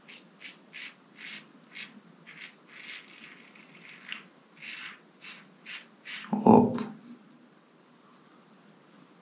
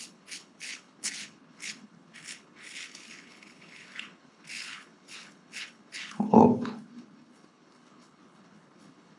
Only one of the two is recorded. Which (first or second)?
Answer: first